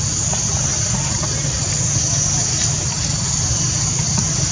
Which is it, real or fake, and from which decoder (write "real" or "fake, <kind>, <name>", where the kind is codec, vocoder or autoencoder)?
real